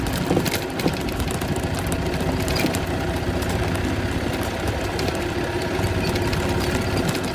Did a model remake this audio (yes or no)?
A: no